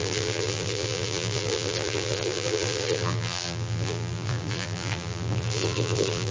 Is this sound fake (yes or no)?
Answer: yes